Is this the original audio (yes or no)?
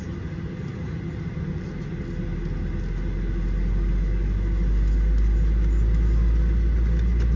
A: yes